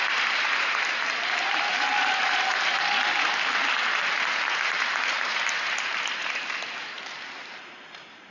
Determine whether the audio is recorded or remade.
remade